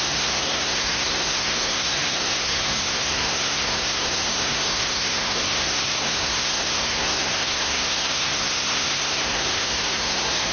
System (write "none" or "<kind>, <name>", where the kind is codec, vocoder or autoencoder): codec, SNAC